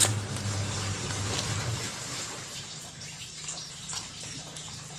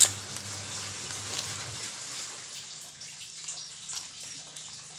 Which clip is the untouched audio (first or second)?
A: second